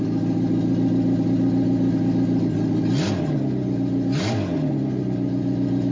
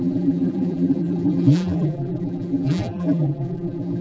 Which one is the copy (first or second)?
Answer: second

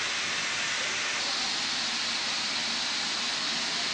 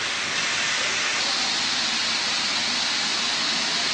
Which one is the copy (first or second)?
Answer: second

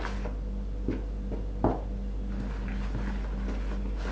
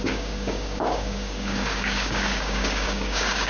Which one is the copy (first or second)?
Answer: second